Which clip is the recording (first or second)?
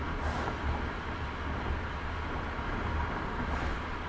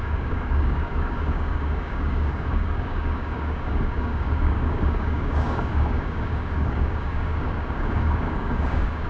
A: first